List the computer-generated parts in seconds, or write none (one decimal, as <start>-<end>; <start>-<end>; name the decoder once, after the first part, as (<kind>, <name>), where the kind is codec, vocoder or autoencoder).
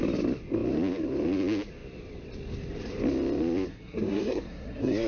3.7-5.1 (codec, SNAC)